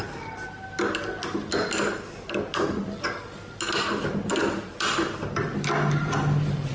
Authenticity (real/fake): real